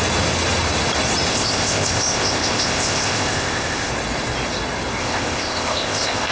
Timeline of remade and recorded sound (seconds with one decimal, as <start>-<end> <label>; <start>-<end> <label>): 0.0-1.3 recorded; 1.3-3.9 remade; 3.9-5.0 recorded; 5.0-6.3 remade